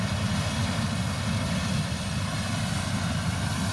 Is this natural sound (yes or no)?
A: yes